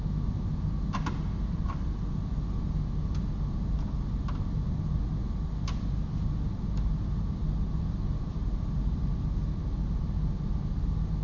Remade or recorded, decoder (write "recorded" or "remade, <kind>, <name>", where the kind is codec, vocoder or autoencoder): recorded